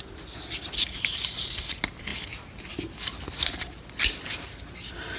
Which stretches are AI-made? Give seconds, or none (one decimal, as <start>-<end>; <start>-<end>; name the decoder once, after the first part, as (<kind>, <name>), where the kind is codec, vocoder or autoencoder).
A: none